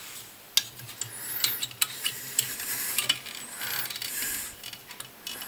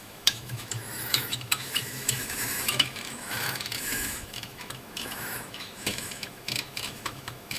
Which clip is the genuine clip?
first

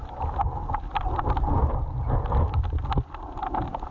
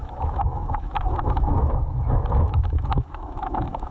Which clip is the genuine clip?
first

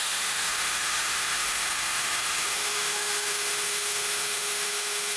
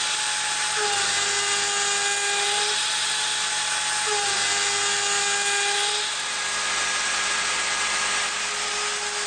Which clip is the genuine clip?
second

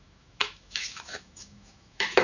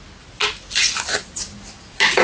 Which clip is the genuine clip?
second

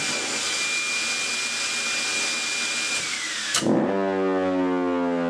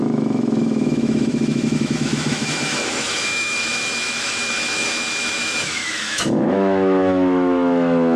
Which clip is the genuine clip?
first